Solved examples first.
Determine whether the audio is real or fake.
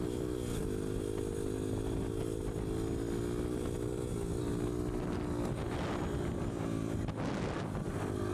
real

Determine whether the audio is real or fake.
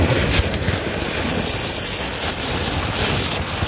real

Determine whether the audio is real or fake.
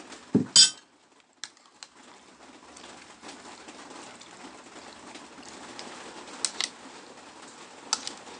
real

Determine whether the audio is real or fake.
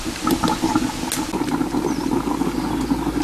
real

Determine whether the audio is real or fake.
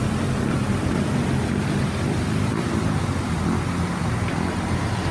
real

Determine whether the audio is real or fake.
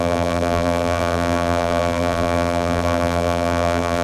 fake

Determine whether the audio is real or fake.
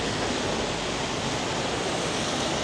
real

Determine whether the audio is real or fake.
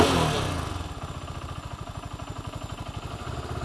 real